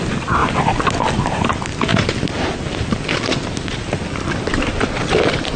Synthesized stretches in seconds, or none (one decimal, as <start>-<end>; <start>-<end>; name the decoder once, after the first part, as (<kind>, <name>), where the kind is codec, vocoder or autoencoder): 1.9-5.6 (vocoder, BigVGAN v2)